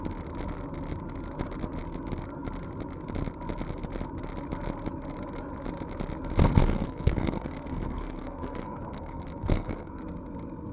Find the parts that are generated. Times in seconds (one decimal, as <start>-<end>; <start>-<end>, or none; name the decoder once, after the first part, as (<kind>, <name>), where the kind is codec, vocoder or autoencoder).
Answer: 6.6-10.0 (codec, SNAC)